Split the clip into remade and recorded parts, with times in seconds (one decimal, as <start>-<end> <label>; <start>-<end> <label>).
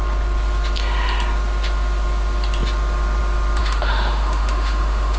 0.0-3.6 recorded; 3.6-5.2 remade